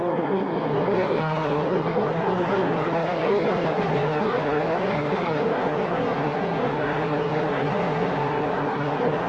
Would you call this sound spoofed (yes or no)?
yes